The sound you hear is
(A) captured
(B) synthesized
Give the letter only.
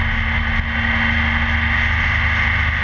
A